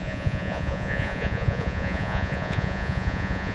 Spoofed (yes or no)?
yes